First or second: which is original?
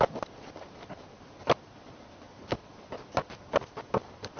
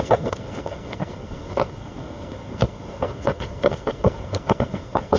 first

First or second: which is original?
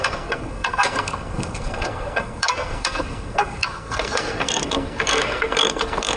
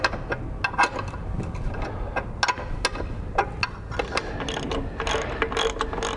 second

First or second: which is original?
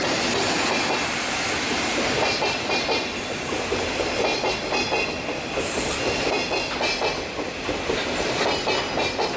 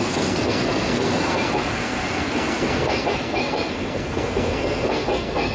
first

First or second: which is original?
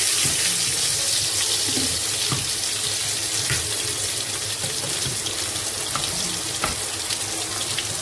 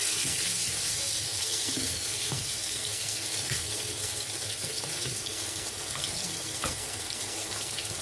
first